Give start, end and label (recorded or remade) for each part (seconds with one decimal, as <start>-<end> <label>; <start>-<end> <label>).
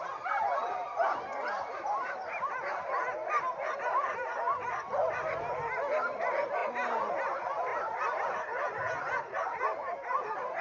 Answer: 0.0-10.6 recorded